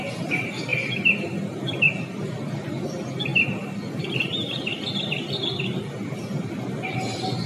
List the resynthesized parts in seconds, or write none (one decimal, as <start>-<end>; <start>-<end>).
none